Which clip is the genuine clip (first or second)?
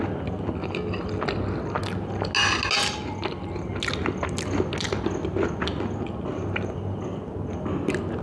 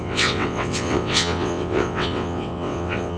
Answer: first